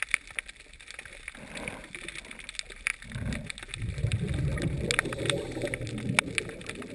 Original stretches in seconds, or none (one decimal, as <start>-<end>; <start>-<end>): 0.0-6.9